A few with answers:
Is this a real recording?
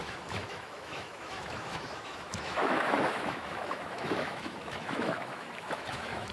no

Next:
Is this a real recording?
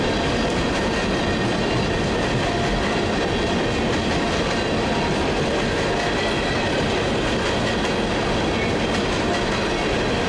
yes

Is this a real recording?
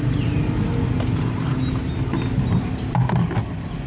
yes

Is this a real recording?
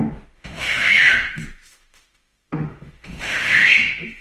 no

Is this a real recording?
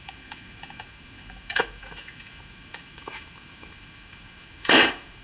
no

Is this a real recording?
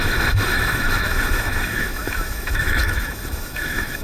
no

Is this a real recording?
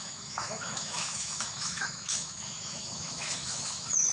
no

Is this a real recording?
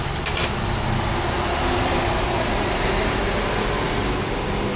yes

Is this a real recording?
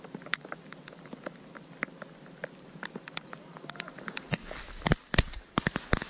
yes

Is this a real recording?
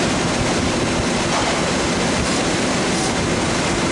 yes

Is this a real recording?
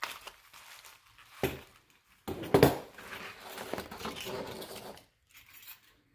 yes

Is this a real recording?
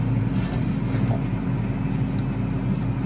yes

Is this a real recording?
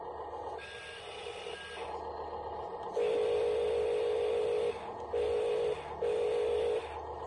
yes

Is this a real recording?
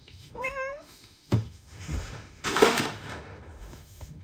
no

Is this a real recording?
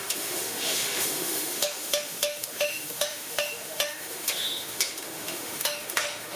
no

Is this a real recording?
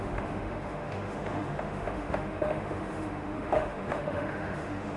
no